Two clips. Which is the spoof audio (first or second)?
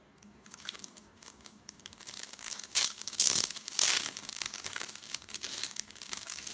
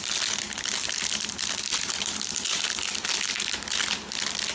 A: first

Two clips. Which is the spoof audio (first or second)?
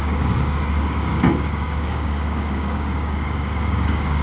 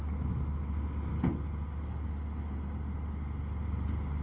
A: first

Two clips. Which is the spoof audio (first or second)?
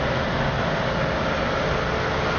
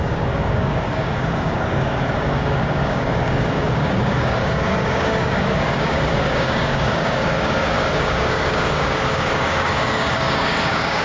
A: second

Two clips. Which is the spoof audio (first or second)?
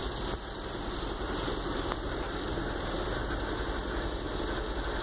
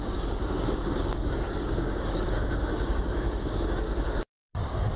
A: second